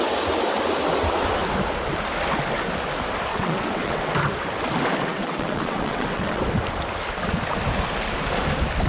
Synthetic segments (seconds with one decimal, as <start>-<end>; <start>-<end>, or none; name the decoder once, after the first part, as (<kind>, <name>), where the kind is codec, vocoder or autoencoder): 3.3-4.1 (vocoder, WaveNeXt); 5.1-6.4